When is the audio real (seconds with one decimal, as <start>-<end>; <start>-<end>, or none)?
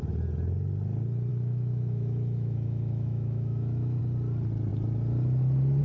0.0-1.3; 4.0-5.8